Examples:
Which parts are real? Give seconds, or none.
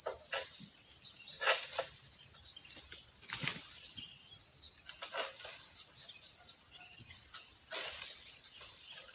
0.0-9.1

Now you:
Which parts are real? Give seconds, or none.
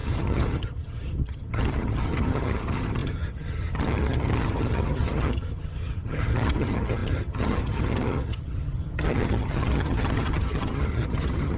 none